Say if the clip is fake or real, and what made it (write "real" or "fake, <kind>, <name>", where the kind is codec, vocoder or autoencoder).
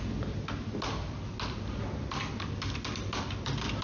real